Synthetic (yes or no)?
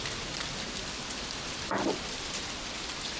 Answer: no